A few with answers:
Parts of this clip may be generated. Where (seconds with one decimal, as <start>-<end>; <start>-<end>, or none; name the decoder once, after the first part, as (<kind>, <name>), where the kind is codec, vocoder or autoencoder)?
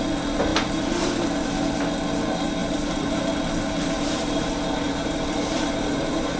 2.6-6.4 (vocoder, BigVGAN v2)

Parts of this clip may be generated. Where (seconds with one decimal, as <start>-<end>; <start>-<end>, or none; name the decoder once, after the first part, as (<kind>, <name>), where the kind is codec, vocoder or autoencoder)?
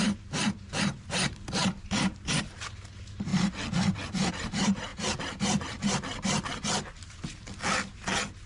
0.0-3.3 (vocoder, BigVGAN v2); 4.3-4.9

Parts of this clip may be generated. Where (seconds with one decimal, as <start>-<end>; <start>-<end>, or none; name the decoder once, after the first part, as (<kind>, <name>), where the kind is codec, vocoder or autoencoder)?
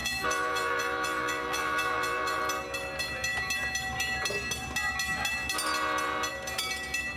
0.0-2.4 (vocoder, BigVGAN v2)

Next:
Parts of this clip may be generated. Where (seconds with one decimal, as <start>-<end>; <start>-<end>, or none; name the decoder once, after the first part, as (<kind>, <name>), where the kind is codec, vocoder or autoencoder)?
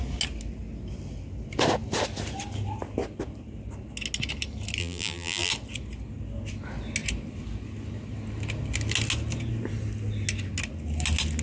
4.8-5.5 (vocoder, BigVGAN v2)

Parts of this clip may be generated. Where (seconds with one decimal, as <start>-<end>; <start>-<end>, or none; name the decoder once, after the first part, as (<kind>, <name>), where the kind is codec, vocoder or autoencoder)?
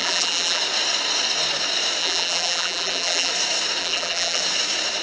0.0-0.6 (vocoder, BigVGAN v2); 2.0-3.3; 3.8-4.4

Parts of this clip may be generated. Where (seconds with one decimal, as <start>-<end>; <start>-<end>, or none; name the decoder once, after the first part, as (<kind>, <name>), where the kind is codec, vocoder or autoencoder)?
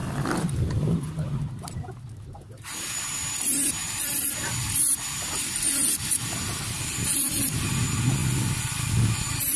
0.0-1.7 (vocoder, BigVGAN v2); 2.3-3.3; 3.8-7.7; 8.2-9.0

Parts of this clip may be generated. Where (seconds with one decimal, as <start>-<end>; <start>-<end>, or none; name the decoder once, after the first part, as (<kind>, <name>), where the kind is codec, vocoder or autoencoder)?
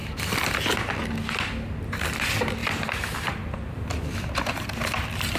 2.6-4.1 (vocoder, BigVGAN v2)